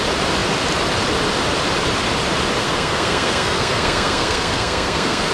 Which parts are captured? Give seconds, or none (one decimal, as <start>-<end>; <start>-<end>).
0.0-2.6